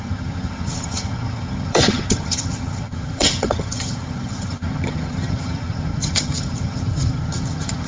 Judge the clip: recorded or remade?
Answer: remade